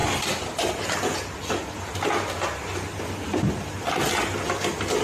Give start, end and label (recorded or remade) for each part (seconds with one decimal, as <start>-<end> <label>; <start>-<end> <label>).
0.0-5.0 recorded